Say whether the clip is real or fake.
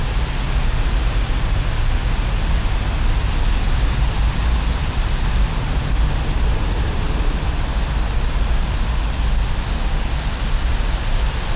real